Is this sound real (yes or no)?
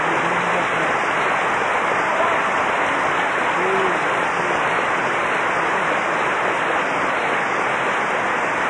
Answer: yes